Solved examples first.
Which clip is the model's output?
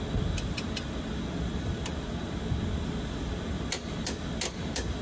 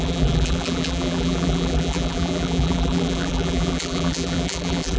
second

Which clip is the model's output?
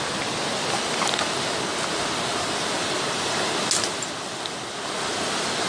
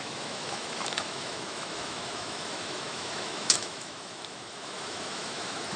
second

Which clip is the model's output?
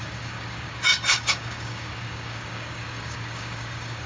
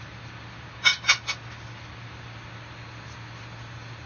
first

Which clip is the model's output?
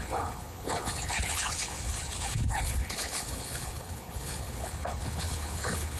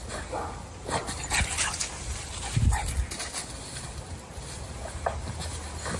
first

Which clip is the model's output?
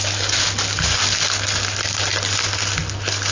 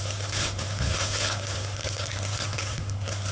second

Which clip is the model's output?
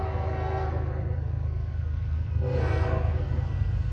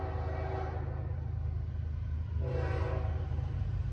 first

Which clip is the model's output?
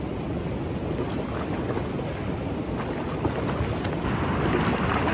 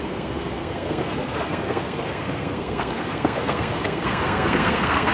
second